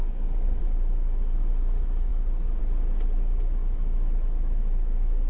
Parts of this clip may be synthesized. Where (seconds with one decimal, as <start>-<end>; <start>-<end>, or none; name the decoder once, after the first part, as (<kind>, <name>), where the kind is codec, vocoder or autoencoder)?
0.0-0.6 (codec, DAC)